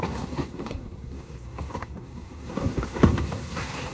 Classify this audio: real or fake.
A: fake